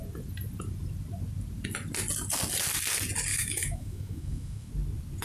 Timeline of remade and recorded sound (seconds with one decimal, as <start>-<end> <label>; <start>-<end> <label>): 0.0-3.3 recorded; 3.3-4.7 remade; 4.7-5.2 recorded